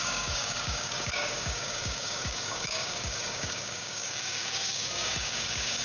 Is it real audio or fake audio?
fake